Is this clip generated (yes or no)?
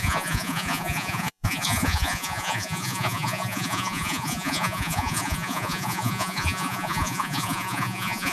yes